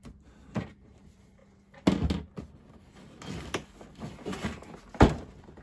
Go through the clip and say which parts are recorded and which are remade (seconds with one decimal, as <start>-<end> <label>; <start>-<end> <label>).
0.0-1.4 remade; 1.4-4.8 recorded; 4.8-5.6 remade